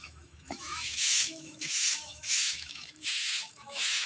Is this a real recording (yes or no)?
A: no